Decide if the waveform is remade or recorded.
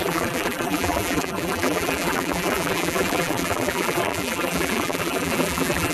remade